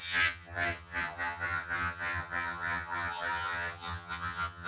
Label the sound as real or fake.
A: fake